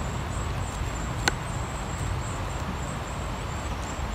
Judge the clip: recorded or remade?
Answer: recorded